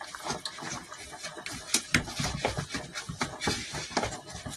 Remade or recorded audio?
recorded